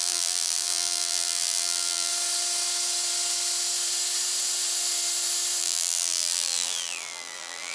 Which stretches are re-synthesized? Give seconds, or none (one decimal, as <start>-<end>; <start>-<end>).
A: 0.0-2.1; 5.6-7.7